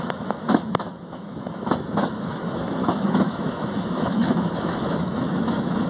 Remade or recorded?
remade